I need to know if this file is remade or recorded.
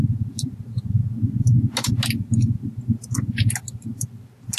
recorded